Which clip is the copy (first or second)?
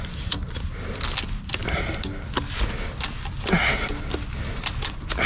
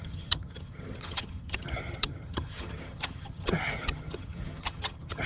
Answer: second